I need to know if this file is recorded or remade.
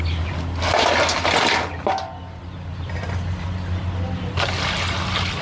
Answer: recorded